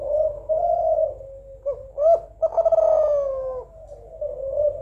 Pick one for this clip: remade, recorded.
recorded